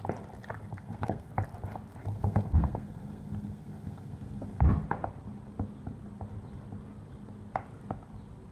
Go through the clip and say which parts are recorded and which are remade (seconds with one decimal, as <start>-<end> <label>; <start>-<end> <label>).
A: 0.0-0.7 recorded; 0.7-1.3 remade; 1.3-2.0 recorded; 2.0-4.6 remade; 4.6-8.5 recorded